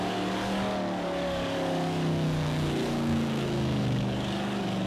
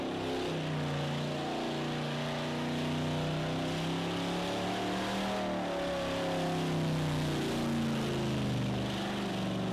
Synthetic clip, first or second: first